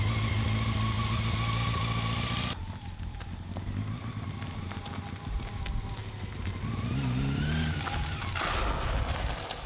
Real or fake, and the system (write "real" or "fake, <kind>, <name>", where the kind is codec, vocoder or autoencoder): real